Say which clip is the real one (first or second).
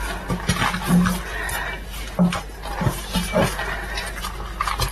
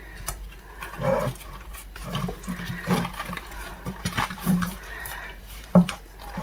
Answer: first